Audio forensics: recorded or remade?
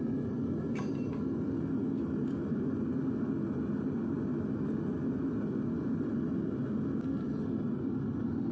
recorded